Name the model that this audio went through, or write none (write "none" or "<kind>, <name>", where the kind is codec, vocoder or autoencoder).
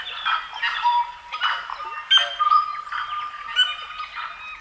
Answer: none